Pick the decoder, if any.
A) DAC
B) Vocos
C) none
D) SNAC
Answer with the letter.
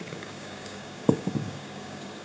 A